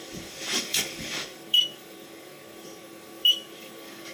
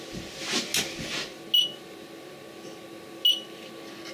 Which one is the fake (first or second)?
first